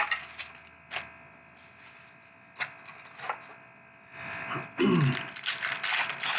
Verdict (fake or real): real